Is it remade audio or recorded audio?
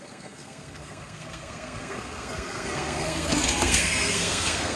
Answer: remade